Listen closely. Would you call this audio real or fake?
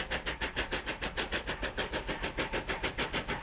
real